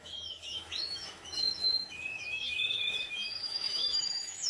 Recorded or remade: remade